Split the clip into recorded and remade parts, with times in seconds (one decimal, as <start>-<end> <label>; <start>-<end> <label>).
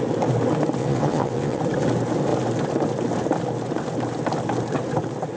0.0-0.8 recorded; 0.8-1.6 remade; 1.6-5.4 recorded